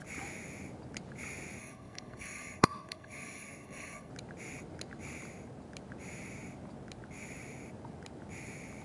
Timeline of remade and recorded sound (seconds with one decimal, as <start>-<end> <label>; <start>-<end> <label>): 0.0-1.6 recorded; 1.6-4.1 remade; 4.1-8.8 recorded